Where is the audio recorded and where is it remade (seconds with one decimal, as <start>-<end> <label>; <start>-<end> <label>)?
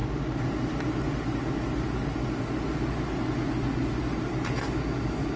0.0-5.4 recorded